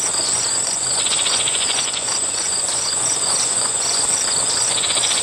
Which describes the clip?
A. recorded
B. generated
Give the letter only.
B